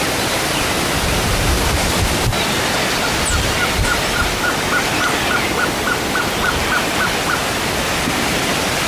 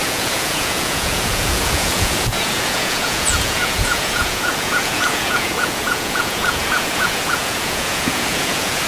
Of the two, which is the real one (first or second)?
first